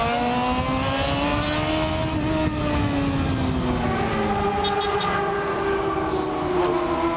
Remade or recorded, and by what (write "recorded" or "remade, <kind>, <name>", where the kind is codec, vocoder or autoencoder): recorded